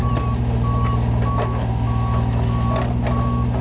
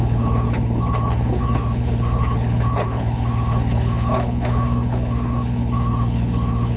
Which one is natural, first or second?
first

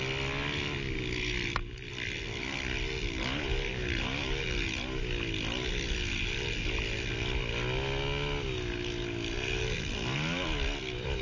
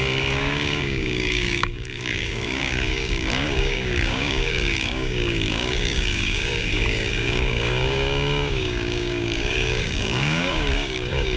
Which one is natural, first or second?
first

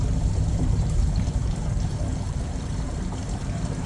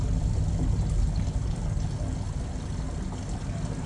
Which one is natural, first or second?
second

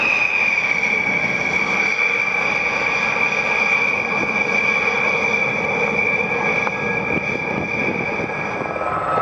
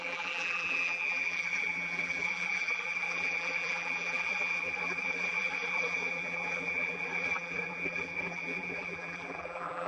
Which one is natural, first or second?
first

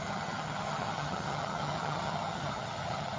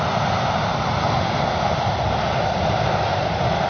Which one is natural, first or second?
second